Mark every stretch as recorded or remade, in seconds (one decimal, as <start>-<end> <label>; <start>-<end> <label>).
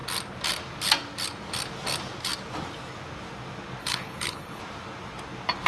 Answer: 0.0-3.8 recorded; 3.8-4.6 remade; 4.6-5.7 recorded